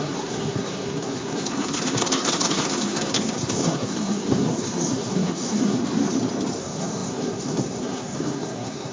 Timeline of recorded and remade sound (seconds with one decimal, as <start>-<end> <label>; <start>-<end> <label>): 0.0-5.8 remade; 5.8-6.6 recorded; 6.6-8.9 remade